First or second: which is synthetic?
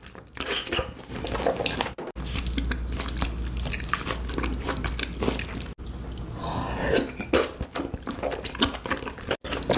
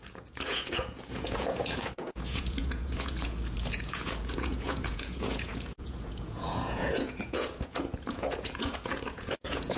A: second